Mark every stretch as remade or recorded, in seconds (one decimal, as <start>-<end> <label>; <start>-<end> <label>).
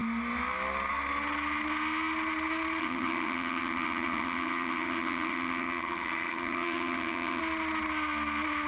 0.0-2.8 recorded; 2.8-7.4 remade; 7.4-8.7 recorded